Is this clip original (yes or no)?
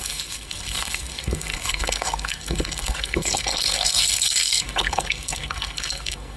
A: no